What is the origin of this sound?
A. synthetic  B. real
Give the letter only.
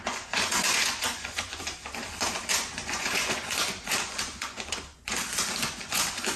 A